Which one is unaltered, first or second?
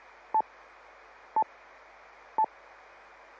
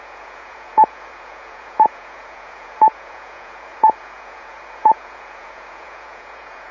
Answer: first